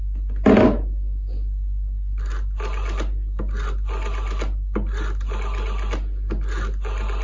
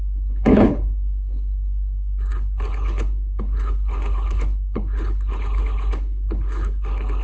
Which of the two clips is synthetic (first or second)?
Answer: second